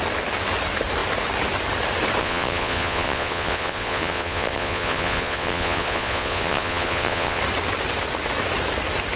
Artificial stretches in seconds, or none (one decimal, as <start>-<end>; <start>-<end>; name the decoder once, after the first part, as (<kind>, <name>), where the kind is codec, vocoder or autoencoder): 2.2-7.4 (vocoder, Vocos)